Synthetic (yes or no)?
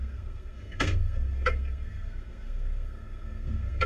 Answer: yes